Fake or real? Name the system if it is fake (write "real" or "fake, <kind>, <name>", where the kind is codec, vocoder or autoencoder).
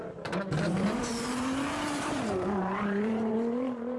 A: fake, vocoder, BigVGAN v2